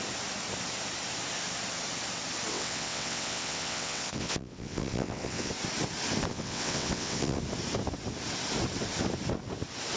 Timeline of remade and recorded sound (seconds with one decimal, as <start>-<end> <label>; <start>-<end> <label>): 0.0-2.5 recorded; 2.5-5.5 remade; 5.5-6.3 recorded; 6.3-7.4 remade; 7.4-10.0 recorded